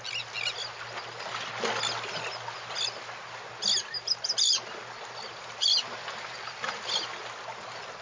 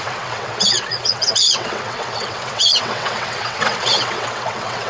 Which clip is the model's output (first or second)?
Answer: second